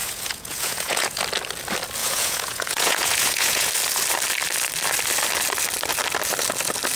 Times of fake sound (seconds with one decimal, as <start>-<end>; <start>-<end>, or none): 0.0-1.2; 2.0-3.7